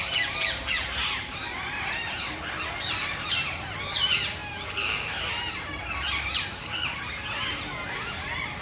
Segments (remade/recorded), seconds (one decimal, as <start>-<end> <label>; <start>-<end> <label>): 0.0-4.4 remade; 4.4-5.7 recorded; 5.7-8.6 remade